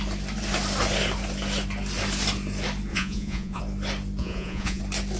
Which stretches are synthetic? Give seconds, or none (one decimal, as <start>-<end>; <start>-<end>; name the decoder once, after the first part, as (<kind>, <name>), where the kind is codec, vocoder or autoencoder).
2.9-3.6 (vocoder, Vocos); 4.2-4.8